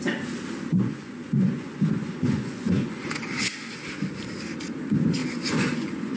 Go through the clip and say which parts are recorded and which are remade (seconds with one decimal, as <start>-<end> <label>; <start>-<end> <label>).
0.0-0.7 recorded; 0.7-3.2 remade; 3.2-5.2 recorded; 5.2-6.2 remade